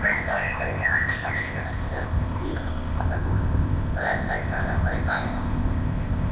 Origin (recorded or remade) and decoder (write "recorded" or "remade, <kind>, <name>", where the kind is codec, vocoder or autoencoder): remade, codec, ZipCodec